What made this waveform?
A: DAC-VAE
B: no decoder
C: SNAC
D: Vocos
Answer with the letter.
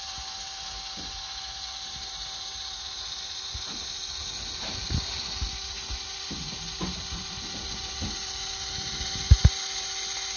B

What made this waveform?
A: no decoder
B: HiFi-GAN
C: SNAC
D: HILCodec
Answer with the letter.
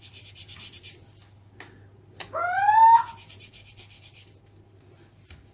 A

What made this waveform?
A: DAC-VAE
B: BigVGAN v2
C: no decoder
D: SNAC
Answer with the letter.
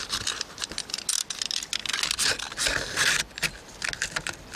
C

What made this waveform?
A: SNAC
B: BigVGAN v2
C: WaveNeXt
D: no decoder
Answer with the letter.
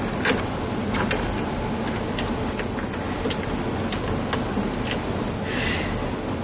D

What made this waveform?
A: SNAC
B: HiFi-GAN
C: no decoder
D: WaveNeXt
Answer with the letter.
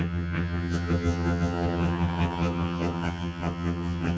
B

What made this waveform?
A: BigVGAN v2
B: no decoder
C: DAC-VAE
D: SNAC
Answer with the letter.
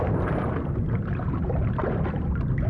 B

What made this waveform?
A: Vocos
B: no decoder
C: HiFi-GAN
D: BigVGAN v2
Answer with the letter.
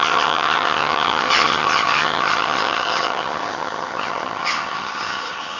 C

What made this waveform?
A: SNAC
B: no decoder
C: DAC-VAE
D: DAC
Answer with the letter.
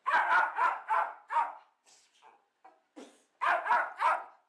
B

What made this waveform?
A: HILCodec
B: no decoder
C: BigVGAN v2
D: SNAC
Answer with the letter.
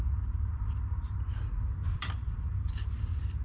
C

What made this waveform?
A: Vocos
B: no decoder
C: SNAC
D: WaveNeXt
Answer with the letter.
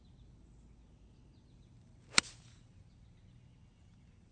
B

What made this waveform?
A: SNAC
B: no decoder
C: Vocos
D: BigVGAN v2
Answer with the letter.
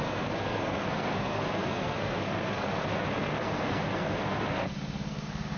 A